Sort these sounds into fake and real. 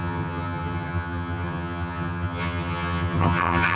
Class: fake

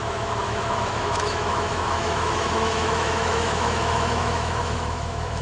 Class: fake